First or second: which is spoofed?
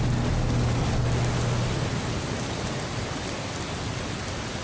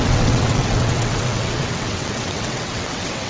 second